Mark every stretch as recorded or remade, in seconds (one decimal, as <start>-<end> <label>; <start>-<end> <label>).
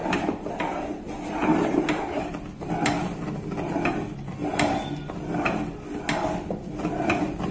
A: 0.0-2.2 remade; 2.2-7.5 recorded